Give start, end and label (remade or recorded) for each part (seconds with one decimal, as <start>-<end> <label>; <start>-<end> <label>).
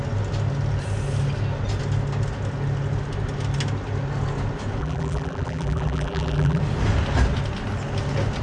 0.0-4.8 recorded; 4.8-6.6 remade; 6.6-8.4 recorded